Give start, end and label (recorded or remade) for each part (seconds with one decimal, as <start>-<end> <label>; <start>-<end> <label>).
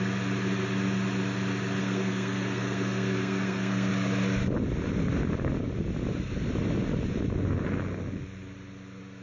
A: 0.0-1.8 recorded; 1.8-3.9 remade; 3.9-9.2 recorded